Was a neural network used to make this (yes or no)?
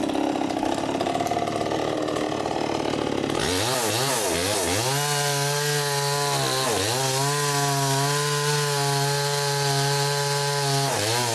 no